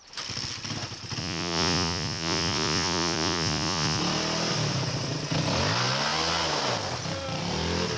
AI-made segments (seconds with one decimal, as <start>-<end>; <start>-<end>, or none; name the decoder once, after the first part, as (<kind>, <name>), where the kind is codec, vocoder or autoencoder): 1.2-4.0 (vocoder, Vocos)